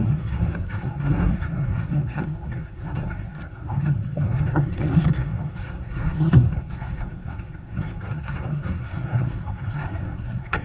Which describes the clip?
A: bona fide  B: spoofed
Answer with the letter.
B